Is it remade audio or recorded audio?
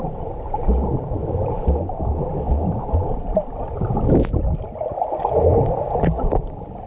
recorded